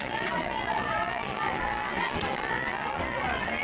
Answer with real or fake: fake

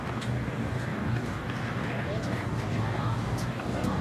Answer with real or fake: fake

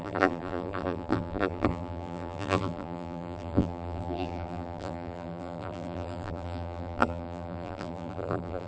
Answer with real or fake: fake